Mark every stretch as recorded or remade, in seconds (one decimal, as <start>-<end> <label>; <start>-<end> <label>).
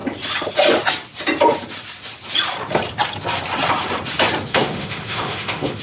0.0-4.5 recorded; 4.5-5.8 remade